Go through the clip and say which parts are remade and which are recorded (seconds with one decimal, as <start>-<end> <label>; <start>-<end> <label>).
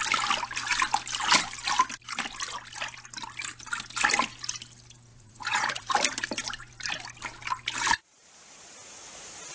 0.0-5.1 recorded; 5.1-5.9 remade; 5.9-9.5 recorded